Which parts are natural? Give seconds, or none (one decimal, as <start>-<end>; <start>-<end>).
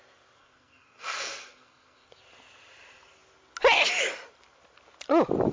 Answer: 0.0-0.4; 2.1-5.5